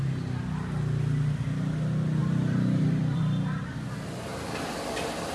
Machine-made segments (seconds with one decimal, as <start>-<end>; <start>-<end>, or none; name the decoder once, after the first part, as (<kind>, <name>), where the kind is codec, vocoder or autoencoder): 2.2-3.2 (vocoder, BigVGAN v2); 4.3-5.3

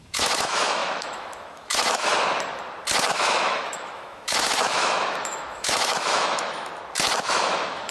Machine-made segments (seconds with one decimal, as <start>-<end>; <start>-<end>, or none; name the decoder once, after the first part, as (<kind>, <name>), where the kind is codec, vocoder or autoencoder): 0.0-2.1 (autoencoder, DAC-VAE); 3.1-6.7; 7.3-7.9

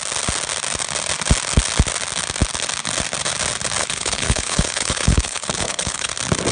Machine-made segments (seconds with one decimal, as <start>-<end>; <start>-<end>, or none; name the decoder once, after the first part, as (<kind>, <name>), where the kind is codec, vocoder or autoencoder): 3.8-6.1 (codec, HILCodec)

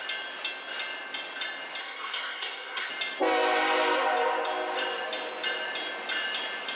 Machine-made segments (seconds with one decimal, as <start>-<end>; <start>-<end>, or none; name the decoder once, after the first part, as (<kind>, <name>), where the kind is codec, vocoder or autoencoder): 1.8-2.9 (codec, SNAC)

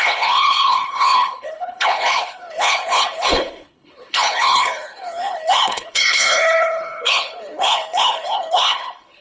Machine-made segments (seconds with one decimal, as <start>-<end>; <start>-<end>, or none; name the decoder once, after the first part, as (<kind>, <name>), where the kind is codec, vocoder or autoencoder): 0.0-9.2 (codec, HILCodec)

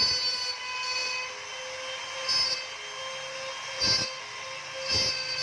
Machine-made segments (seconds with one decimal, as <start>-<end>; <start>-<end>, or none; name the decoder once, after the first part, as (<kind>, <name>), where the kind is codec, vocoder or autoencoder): none

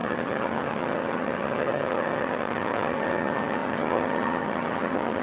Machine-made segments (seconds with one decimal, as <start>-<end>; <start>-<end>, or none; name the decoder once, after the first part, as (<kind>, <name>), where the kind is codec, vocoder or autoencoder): 0.0-5.2 (vocoder, HiFi-GAN)